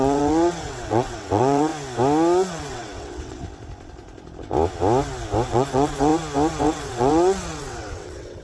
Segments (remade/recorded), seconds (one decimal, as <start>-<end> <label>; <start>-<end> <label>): 0.0-1.7 remade; 1.7-2.5 recorded; 2.5-3.4 remade; 3.4-5.5 recorded; 5.5-6.1 remade; 6.1-6.6 recorded; 6.6-8.4 remade